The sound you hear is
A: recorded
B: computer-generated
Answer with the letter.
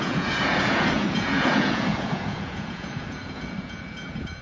B